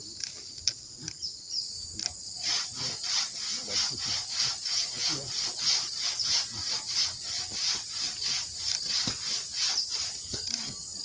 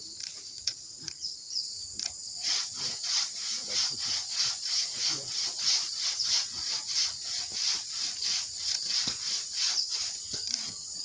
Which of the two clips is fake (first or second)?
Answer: second